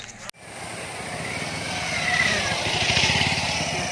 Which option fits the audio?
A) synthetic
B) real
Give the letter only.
B